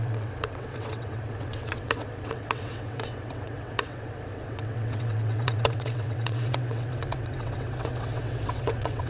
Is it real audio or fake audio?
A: fake